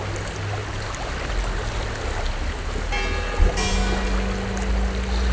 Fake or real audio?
real